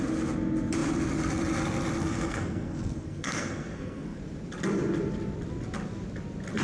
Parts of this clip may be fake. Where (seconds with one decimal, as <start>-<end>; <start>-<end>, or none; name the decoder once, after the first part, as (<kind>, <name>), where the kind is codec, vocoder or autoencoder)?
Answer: 2.0-4.2 (codec, SNAC)